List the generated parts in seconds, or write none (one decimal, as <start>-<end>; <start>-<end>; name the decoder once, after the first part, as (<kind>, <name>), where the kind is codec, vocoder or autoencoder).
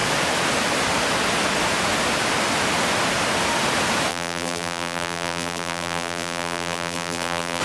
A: 4.1-7.6 (vocoder, BigVGAN v2)